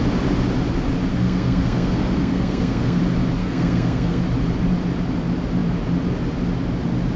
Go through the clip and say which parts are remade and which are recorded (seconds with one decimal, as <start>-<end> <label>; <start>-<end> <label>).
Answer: 0.0-1.1 recorded; 1.1-3.0 remade; 3.0-3.4 recorded; 3.4-4.2 remade; 4.2-7.2 recorded